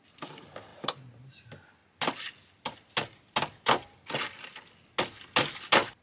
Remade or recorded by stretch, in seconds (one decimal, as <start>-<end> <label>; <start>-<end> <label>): 0.0-6.0 recorded